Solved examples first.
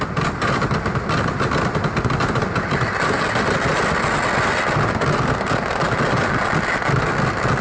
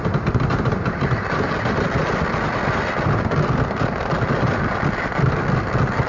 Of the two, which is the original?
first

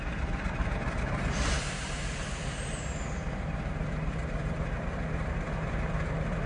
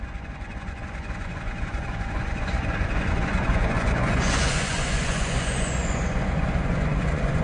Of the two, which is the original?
first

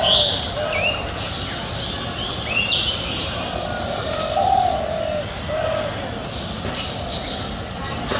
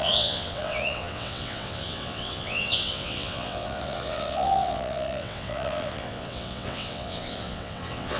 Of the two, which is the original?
first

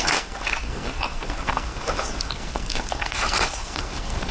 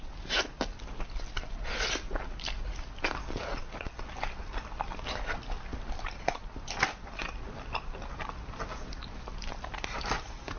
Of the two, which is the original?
second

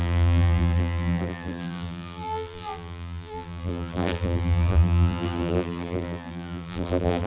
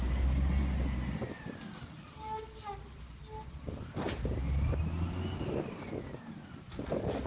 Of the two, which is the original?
second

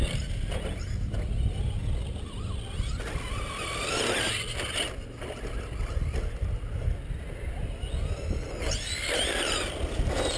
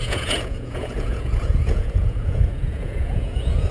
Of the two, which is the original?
first